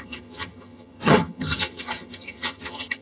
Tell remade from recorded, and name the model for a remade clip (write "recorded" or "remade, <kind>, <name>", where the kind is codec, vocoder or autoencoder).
remade, vocoder, HiFi-GAN